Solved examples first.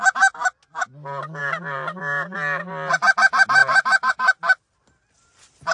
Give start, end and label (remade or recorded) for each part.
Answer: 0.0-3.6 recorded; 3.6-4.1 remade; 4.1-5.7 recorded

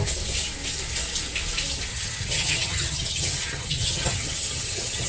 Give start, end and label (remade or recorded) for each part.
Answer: 0.0-1.9 recorded; 1.9-5.1 remade